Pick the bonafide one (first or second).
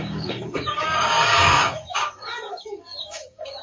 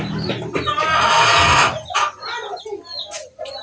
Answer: second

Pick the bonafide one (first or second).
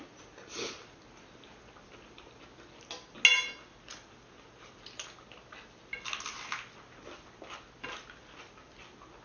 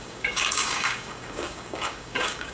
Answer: first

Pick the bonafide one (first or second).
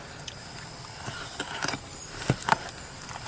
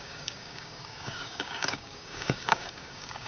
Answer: first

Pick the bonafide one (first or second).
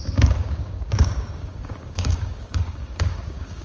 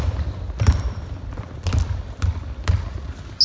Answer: second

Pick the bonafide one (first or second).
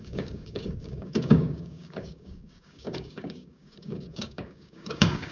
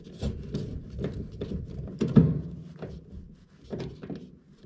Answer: second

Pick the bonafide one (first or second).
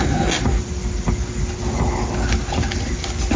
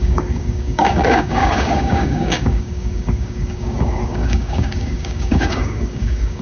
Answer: first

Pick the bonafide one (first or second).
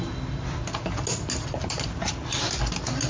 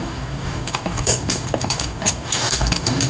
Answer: first